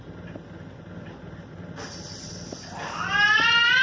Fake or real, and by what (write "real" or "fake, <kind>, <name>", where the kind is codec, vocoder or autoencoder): real